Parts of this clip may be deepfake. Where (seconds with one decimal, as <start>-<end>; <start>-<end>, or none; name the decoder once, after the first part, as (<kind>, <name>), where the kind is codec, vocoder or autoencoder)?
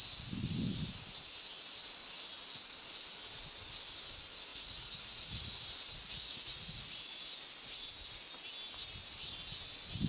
4.5-5.6 (vocoder, Vocos); 6.0-7.3